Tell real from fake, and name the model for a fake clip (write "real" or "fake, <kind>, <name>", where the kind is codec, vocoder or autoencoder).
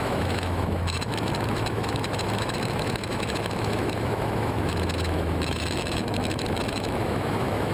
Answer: fake, autoencoder, DAC-VAE